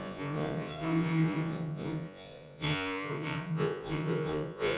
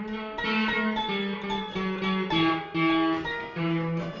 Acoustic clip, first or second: second